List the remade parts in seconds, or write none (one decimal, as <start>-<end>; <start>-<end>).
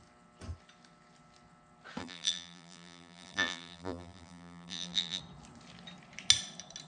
2.0-5.2